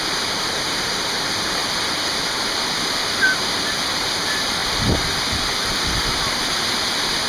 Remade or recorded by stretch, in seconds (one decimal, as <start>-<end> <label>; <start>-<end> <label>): 0.0-1.6 remade; 1.6-3.9 recorded; 3.9-4.6 remade; 4.6-6.8 recorded; 6.8-7.3 remade